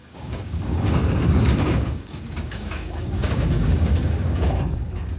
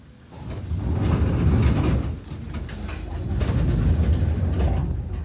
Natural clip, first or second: second